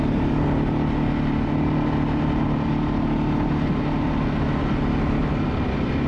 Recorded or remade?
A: recorded